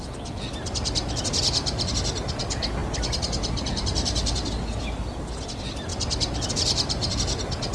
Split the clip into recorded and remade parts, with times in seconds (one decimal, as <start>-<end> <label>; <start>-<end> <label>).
0.0-7.7 recorded